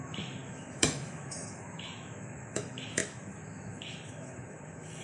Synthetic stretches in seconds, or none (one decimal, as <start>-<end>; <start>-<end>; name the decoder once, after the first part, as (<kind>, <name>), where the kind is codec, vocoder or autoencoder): 0.0-5.0 (autoencoder, DAC-VAE)